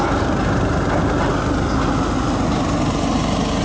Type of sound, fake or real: real